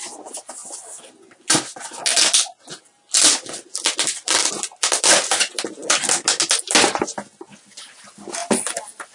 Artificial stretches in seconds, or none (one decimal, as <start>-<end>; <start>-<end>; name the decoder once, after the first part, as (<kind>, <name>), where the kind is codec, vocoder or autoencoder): none